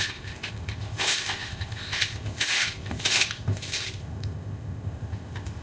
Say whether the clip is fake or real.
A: fake